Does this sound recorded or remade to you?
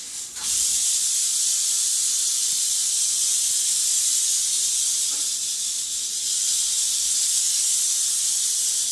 recorded